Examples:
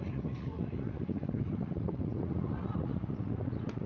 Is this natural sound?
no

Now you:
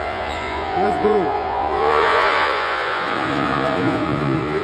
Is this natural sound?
no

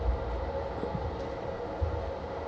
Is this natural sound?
no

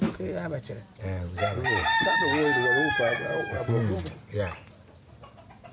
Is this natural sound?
yes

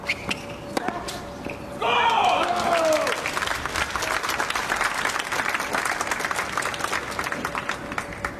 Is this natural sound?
yes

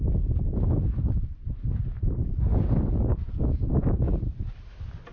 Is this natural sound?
yes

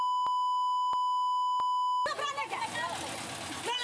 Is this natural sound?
yes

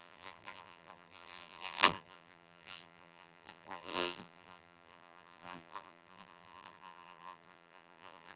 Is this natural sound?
no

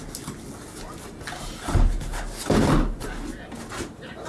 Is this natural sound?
yes